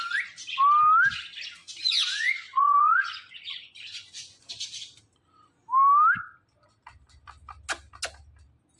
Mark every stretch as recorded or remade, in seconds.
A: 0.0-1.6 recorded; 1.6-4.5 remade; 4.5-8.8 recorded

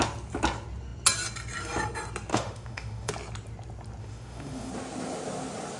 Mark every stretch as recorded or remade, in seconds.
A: 0.0-2.3 recorded; 2.3-3.1 remade; 3.1-4.0 recorded; 4.0-4.7 remade; 4.7-5.8 recorded

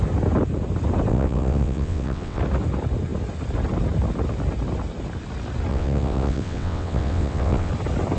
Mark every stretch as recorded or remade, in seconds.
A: 0.0-1.1 recorded; 1.1-2.4 remade; 2.4-5.7 recorded; 5.7-7.7 remade; 7.7-8.2 recorded

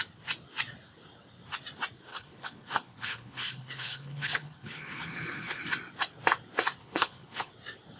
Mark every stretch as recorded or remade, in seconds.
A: 0.0-2.1 recorded; 2.1-5.6 remade; 5.6-6.8 recorded; 6.8-7.5 remade; 7.5-8.0 recorded

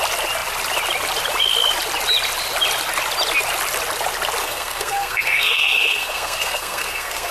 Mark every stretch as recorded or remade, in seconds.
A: 0.0-4.4 recorded; 4.4-7.3 remade

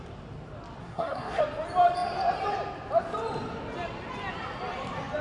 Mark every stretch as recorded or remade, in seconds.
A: 0.0-0.8 recorded; 0.8-1.4 remade; 1.4-5.2 recorded